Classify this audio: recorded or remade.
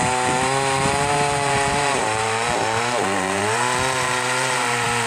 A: remade